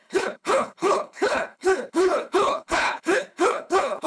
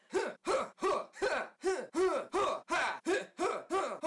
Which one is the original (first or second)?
second